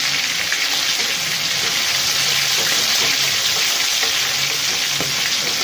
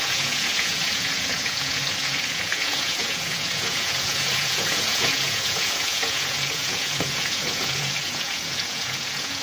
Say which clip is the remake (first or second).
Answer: second